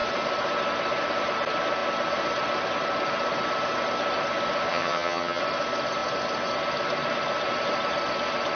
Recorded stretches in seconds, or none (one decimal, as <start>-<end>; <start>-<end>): 0.0-4.7; 5.4-8.6